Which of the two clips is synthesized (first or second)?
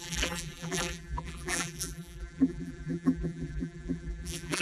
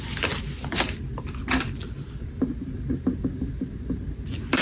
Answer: first